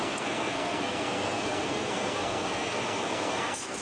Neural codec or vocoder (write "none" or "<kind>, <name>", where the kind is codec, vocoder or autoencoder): codec, SNAC